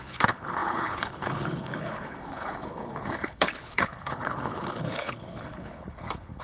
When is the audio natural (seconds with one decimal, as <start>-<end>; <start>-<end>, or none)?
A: none